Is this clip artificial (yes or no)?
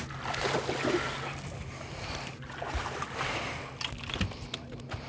no